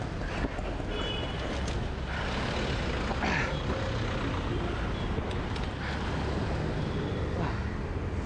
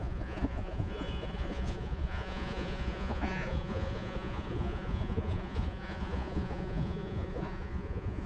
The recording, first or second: first